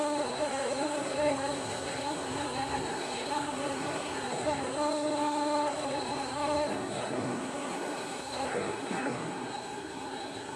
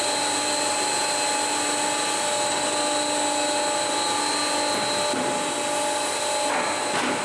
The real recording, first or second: second